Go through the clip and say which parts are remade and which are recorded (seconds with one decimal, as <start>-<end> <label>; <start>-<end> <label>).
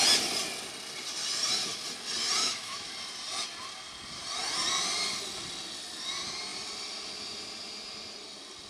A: 0.0-2.4 recorded; 2.4-2.9 remade; 2.9-8.7 recorded